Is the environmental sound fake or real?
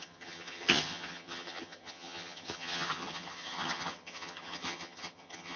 fake